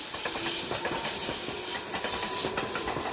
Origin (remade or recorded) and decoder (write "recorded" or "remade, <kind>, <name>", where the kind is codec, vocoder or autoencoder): recorded